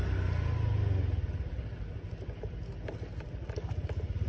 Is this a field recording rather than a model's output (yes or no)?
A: yes